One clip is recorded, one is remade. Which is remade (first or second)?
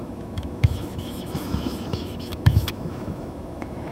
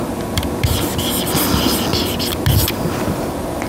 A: first